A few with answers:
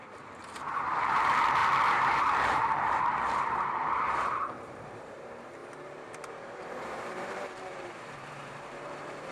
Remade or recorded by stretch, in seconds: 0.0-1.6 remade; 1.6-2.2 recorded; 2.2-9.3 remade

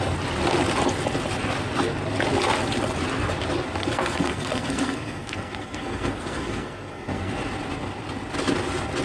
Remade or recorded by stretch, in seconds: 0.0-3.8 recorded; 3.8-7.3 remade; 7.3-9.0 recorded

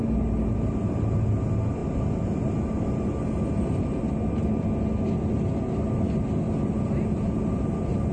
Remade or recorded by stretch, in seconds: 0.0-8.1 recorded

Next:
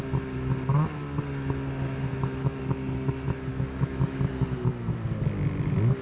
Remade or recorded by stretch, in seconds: 0.0-2.1 recorded; 2.1-2.6 remade; 2.6-3.5 recorded; 3.5-4.3 remade; 4.3-6.0 recorded

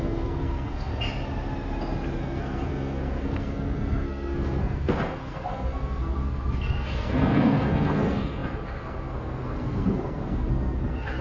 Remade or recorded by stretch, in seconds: 0.0-0.9 remade; 0.9-2.2 recorded; 2.2-11.2 remade